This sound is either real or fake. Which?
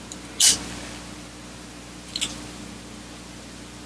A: real